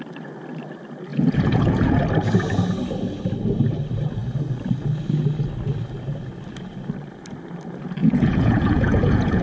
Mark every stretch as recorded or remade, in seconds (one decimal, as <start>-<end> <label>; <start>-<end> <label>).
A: 0.0-1.1 recorded; 1.1-2.0 remade; 2.0-8.0 recorded; 8.0-9.4 remade